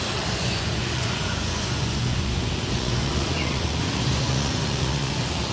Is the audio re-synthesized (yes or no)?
yes